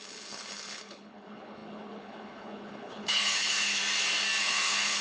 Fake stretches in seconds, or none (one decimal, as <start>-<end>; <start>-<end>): 0.0-3.8; 4.4-5.0